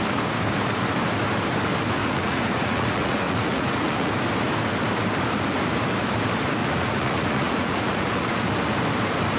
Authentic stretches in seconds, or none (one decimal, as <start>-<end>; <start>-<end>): 0.0-2.0; 4.1-6.6; 8.5-9.4

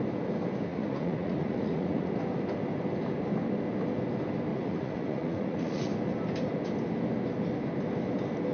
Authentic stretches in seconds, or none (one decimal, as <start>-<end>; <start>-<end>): 0.0-0.7; 2.1-4.5; 5.9-8.5

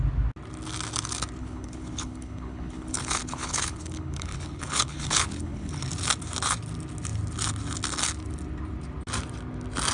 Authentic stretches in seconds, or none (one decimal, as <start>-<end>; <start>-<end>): 0.0-1.4; 5.7-9.9

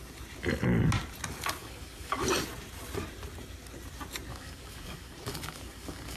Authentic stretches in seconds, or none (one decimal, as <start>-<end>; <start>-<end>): 0.0-1.6; 2.2-4.3

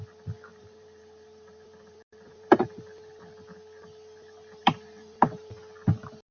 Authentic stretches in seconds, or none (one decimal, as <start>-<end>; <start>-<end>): 0.0-0.5; 2.8-4.6; 5.5-6.3

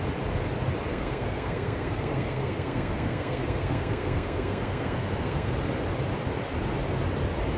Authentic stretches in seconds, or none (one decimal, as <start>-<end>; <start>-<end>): 0.0-0.9; 5.5-7.6

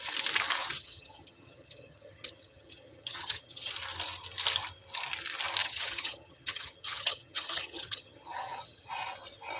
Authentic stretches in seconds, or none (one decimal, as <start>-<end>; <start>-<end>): 0.0-0.6; 3.7-5.6; 8.9-9.6

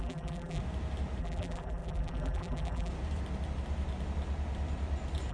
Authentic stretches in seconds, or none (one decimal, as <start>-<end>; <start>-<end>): 0.6-1.2; 2.9-5.3